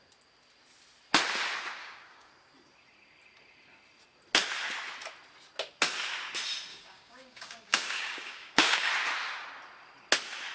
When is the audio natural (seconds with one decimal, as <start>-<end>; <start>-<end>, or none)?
0.0-1.8; 2.3-6.7; 8.9-10.5